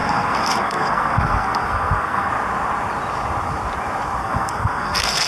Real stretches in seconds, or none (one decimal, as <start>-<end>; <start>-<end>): 2.3-4.2